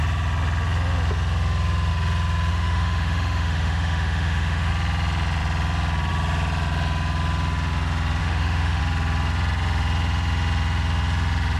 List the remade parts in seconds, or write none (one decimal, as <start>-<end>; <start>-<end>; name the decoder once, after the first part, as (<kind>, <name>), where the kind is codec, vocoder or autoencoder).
2.5-4.7 (autoencoder, DAC-VAE); 8.2-8.8